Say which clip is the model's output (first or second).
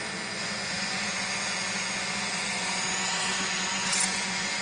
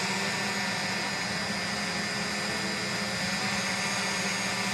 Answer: first